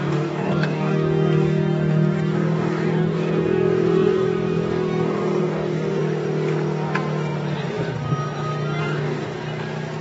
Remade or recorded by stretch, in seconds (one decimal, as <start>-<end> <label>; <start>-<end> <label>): 0.0-6.0 remade; 6.0-8.8 recorded; 8.8-9.4 remade; 9.4-10.0 recorded